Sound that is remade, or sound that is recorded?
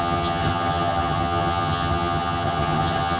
remade